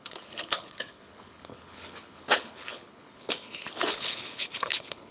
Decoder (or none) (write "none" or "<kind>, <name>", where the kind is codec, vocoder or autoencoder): codec, HILCodec